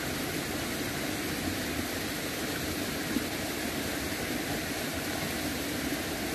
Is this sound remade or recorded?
recorded